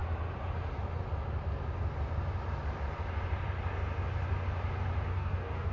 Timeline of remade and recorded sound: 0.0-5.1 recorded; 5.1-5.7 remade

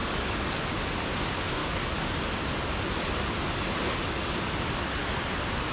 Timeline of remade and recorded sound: 0.0-0.8 remade; 0.8-1.6 recorded; 1.6-2.2 remade; 2.2-5.7 recorded

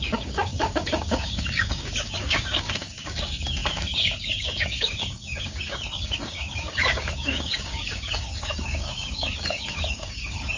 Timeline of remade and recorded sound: 0.0-10.6 remade

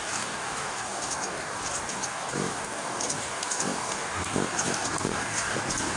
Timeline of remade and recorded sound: 0.0-6.0 remade

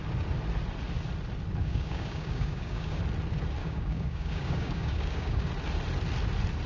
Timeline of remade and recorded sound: 0.0-1.6 recorded; 1.6-3.0 remade; 3.0-3.6 recorded; 3.6-5.5 remade; 5.5-6.7 recorded

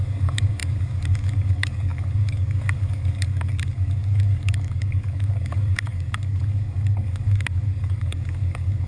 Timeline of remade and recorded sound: 0.0-8.9 remade

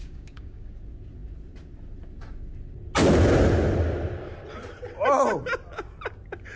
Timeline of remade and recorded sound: 0.0-0.7 remade; 0.7-6.6 recorded

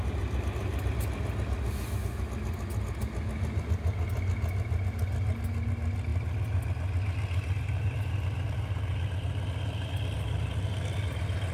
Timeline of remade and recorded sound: 0.0-11.5 recorded